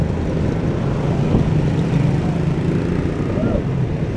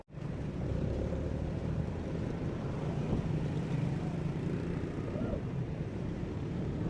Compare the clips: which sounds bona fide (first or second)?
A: first